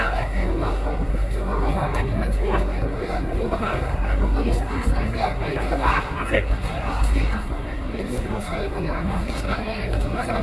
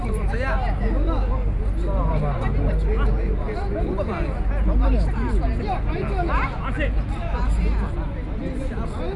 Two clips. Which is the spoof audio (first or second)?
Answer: first